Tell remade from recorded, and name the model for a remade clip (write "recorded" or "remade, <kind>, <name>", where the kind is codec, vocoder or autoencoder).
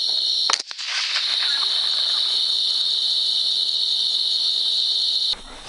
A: recorded